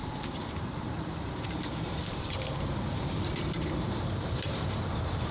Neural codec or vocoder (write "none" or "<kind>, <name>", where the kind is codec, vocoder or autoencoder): vocoder, BigVGAN v2